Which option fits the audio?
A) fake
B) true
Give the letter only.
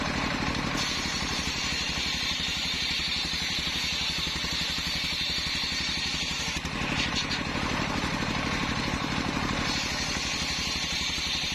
A